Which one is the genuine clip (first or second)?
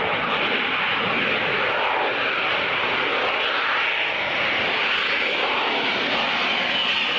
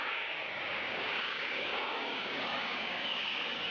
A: first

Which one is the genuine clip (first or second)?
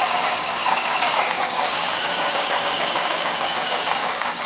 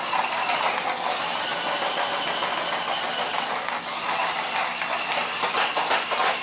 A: second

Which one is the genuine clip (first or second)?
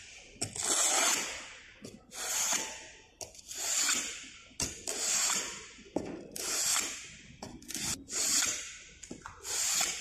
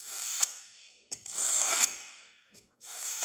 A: first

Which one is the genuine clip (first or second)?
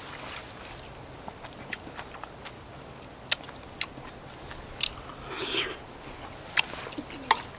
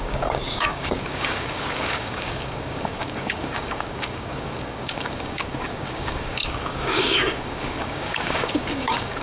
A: first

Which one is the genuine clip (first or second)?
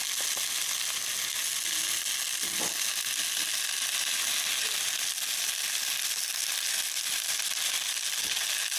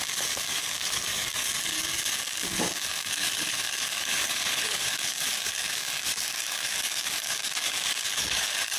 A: first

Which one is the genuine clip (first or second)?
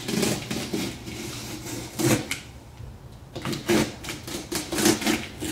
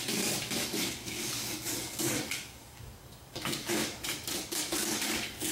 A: first